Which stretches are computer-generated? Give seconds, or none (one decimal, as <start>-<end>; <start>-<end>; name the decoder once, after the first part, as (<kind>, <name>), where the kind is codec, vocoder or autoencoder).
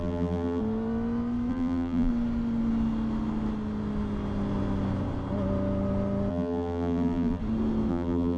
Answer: 0.0-0.6 (vocoder, BigVGAN v2); 1.5-2.1; 6.3-7.4; 7.9-8.4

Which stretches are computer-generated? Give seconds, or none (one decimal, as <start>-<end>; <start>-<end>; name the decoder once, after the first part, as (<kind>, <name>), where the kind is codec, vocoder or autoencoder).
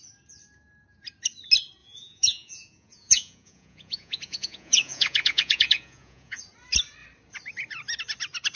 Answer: 1.8-6.4 (vocoder, Vocos)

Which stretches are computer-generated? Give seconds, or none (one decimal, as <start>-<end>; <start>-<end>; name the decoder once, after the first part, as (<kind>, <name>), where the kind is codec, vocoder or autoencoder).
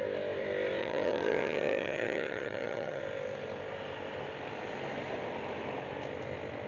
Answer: 0.8-3.0 (vocoder, HiFi-GAN)